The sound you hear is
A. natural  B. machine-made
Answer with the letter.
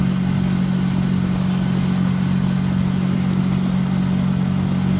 A